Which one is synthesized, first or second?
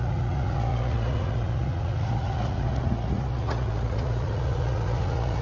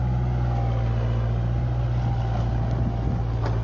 first